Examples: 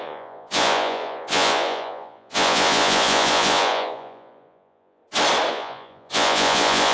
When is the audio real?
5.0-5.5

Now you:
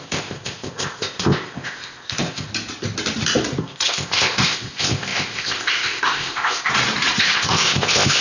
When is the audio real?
2.5-3.6; 6.7-7.2

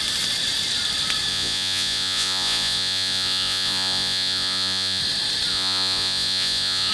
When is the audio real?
0.0-1.3; 5.0-5.5

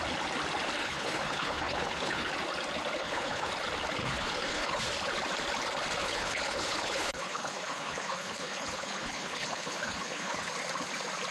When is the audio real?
0.0-0.8; 2.3-3.0; 3.5-4.0; 4.8-6.0; 10.5-11.3

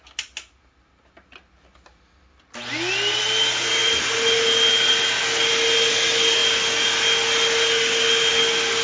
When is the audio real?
0.0-8.8